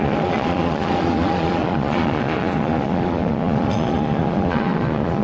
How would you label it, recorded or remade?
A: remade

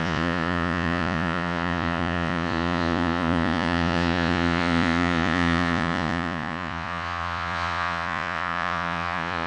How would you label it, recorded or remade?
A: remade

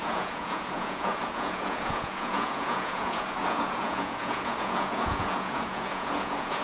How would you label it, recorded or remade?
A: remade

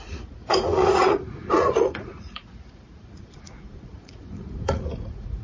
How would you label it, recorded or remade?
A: remade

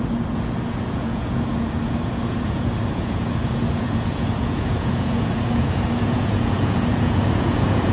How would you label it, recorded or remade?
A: remade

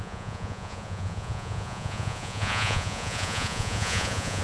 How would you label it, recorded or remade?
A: remade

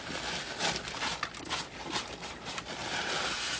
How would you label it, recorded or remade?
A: recorded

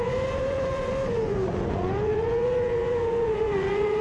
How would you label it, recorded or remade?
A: remade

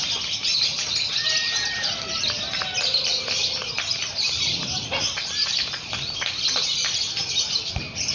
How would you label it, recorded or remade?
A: recorded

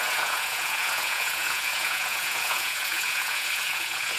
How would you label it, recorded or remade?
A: remade